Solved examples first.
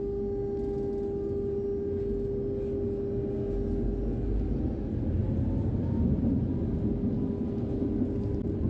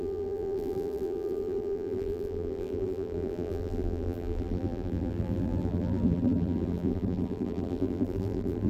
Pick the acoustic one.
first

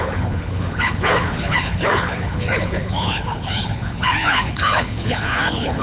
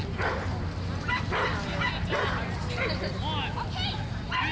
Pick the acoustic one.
second